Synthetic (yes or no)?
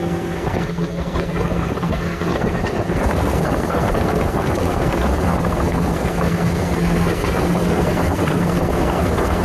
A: yes